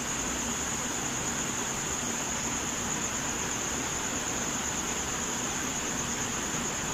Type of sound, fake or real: fake